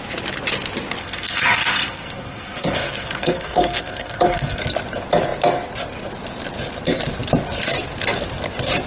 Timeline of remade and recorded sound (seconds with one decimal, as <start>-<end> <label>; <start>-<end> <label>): 0.0-1.0 recorded; 1.0-4.6 remade; 4.6-8.9 recorded